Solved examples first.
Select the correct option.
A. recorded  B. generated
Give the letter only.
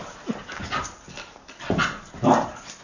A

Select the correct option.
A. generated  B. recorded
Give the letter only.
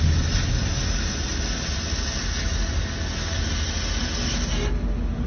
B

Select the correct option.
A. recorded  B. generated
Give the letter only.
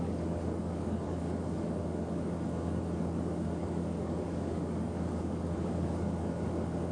B